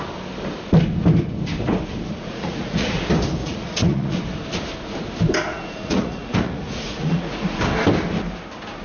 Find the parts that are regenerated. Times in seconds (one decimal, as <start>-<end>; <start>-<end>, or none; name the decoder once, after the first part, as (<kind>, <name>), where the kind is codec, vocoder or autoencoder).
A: 2.1-3.0 (vocoder, Vocos); 3.4-4.2; 5.5-7.6